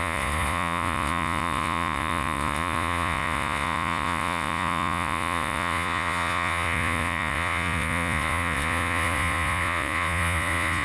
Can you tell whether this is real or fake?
fake